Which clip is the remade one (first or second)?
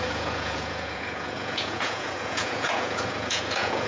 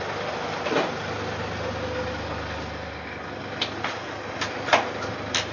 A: first